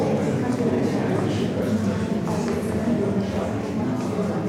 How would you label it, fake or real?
real